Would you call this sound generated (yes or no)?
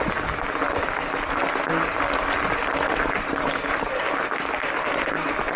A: no